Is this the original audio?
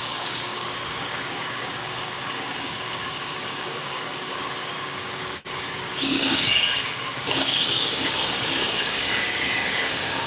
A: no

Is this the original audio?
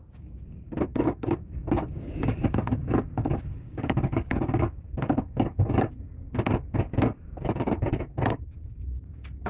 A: no